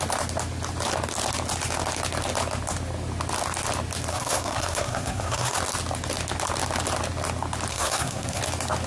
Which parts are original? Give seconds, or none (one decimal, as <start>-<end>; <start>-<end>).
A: 0.0-4.1; 5.6-7.7; 8.4-8.9